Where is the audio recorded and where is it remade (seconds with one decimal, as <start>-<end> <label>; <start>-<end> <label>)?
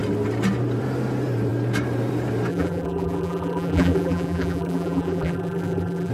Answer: 0.0-2.5 recorded; 2.5-6.1 remade